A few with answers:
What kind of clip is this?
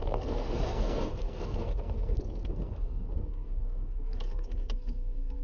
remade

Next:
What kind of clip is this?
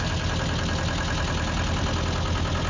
recorded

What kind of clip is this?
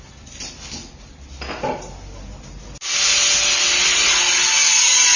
recorded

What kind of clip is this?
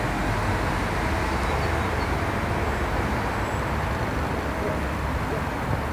recorded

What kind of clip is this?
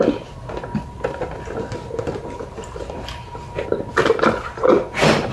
recorded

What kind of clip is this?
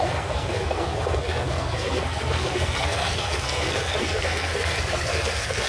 remade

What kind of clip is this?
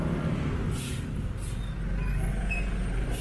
recorded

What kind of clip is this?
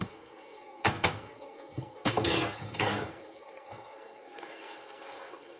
remade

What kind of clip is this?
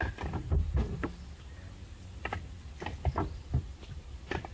recorded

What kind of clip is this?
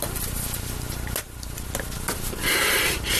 recorded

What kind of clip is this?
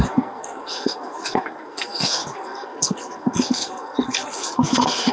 remade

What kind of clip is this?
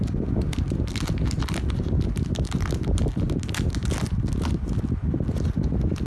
recorded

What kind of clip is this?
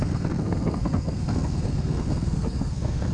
remade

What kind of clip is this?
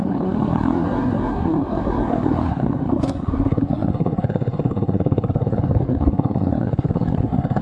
remade